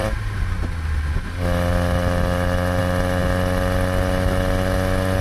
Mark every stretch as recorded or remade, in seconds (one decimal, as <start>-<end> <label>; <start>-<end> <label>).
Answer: 0.0-5.2 recorded